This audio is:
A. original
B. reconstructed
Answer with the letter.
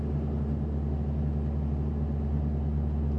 A